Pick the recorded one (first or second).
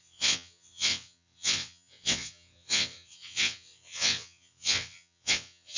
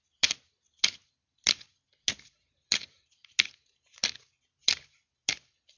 second